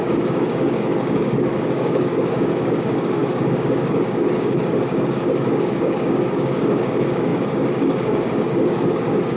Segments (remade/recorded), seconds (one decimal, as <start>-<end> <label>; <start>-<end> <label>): 0.0-9.4 remade

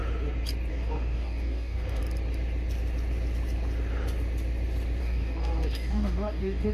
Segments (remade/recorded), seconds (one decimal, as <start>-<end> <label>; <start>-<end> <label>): 0.0-0.7 recorded; 0.7-2.0 remade; 2.0-5.0 recorded; 5.0-6.7 remade

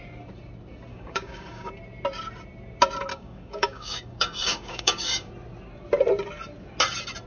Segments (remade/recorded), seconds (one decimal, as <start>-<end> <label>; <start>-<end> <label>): 0.0-0.9 recorded; 0.9-1.7 remade; 1.7-3.1 recorded; 3.1-5.3 remade; 5.3-7.3 recorded

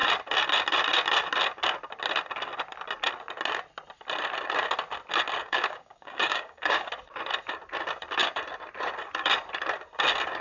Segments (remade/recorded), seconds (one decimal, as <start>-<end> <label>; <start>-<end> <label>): 0.0-5.4 recorded; 5.4-6.9 remade; 6.9-10.4 recorded

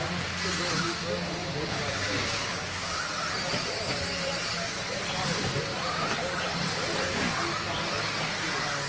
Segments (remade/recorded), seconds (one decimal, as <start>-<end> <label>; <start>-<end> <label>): 0.0-1.4 recorded; 1.4-3.0 remade; 3.0-8.9 recorded

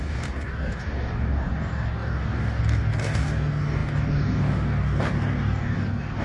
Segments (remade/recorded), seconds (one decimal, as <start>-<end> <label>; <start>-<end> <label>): 0.0-6.2 remade